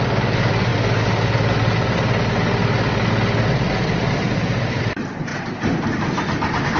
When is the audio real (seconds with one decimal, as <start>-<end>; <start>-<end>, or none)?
0.0-5.3; 6.2-6.8